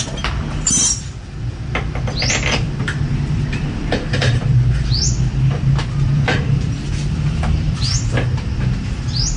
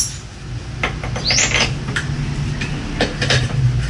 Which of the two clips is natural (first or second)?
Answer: second